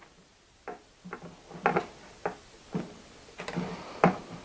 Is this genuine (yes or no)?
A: yes